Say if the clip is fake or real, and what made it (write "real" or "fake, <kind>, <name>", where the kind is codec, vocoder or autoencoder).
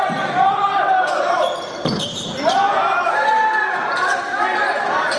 fake, vocoder, BigVGAN v2